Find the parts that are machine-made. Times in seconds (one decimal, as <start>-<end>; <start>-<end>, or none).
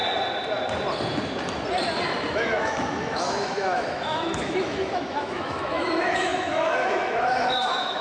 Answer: 2.3-8.0